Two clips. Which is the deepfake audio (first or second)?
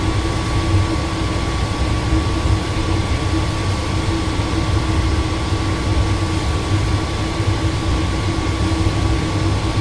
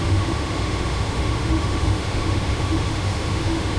second